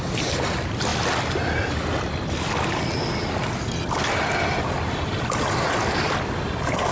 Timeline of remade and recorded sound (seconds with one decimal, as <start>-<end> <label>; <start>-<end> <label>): 0.0-6.9 recorded